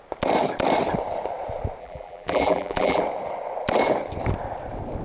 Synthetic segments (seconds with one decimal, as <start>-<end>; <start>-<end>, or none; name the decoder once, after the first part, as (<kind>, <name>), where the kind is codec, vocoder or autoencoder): 1.8-3.0 (vocoder, BigVGAN v2)